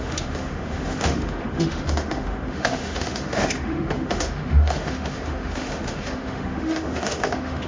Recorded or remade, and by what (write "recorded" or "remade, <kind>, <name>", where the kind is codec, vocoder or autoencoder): remade, autoencoder, DAC-VAE